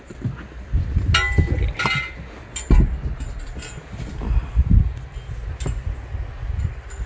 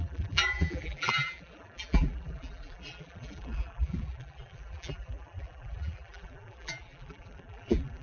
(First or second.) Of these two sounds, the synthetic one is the second